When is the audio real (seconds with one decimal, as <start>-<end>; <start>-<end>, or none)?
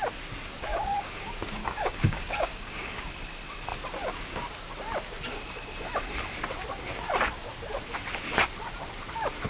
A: 0.0-0.7; 3.1-9.5